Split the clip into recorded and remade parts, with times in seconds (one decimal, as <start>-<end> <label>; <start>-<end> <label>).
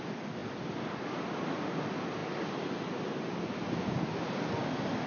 0.0-5.1 recorded